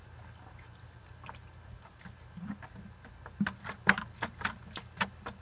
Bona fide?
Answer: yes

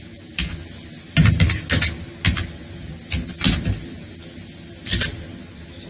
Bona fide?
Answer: yes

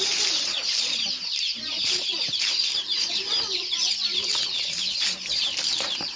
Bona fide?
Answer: no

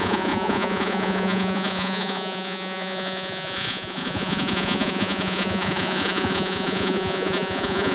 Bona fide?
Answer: no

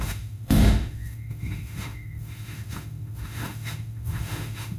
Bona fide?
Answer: no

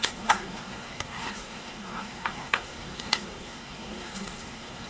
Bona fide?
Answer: no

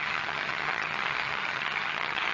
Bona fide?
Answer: no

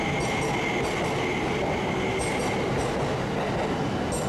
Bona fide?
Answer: yes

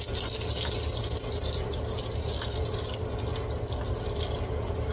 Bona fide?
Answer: yes